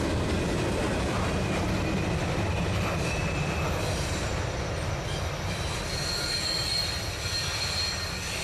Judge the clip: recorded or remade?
recorded